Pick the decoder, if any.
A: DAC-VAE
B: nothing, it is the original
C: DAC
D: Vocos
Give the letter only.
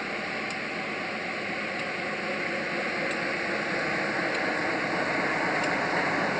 B